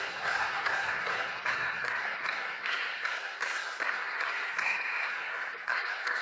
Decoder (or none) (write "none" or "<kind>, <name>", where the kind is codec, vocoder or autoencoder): codec, SNAC